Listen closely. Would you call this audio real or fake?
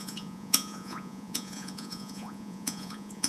fake